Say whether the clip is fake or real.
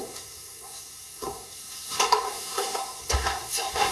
fake